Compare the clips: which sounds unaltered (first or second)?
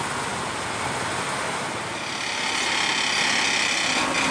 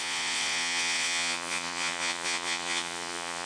first